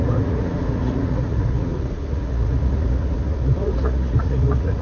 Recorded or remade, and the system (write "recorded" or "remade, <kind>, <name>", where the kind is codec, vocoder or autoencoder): remade, vocoder, Vocos